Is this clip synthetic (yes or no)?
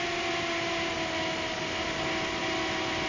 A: no